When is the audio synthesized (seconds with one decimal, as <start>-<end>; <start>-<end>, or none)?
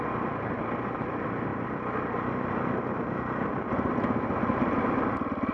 none